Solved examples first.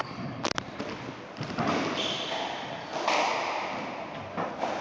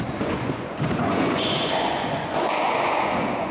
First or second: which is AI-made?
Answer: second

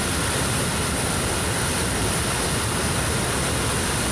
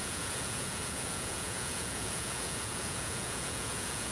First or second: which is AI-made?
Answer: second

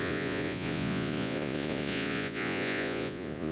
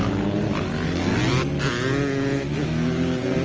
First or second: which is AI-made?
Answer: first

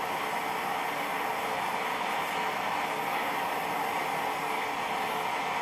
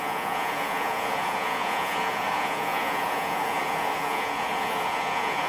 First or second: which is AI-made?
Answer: second